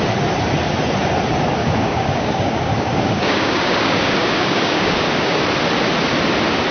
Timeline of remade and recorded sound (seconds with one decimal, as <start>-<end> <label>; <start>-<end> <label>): 0.0-1.6 recorded; 1.6-5.4 remade; 5.4-6.7 recorded